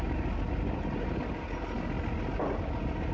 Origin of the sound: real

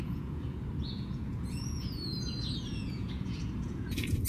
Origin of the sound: fake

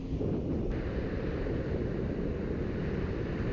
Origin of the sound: real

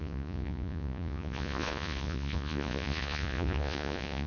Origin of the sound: fake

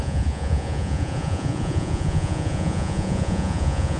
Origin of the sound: fake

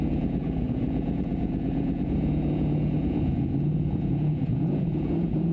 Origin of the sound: fake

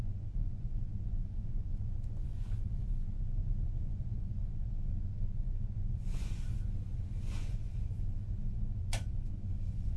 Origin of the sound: fake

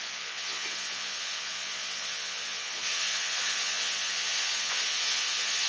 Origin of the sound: fake